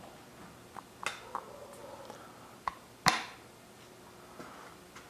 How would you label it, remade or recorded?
recorded